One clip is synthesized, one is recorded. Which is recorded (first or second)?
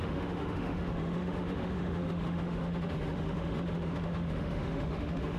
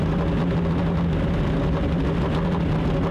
second